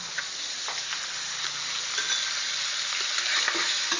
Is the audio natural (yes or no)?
yes